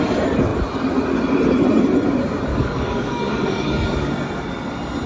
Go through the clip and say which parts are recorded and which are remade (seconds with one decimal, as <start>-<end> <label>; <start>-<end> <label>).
0.0-2.5 recorded; 2.5-4.1 remade; 4.1-5.1 recorded